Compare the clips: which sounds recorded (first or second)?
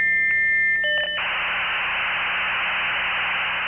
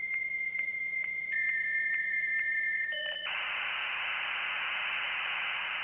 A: first